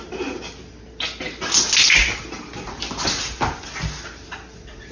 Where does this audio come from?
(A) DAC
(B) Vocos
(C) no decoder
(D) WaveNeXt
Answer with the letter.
C